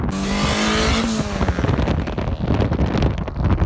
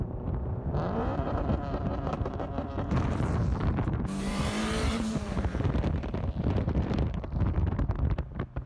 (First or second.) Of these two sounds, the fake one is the second